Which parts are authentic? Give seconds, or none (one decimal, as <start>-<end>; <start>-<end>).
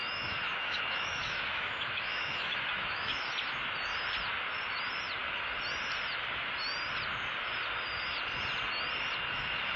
3.1-9.8